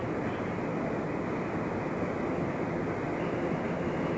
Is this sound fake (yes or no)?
no